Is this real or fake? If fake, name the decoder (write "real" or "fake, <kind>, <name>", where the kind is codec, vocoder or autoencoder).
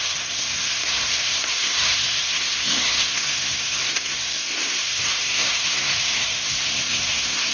fake, codec, SNAC